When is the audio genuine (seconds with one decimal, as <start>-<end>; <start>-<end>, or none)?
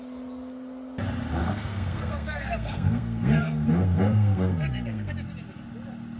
0.0-1.4; 5.1-6.2